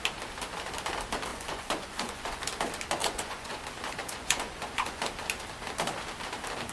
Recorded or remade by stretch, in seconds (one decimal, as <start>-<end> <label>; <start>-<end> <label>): 0.0-1.3 recorded; 1.3-2.4 remade; 2.4-3.0 recorded; 3.0-3.6 remade; 3.6-4.0 recorded; 4.0-5.0 remade; 5.0-6.7 recorded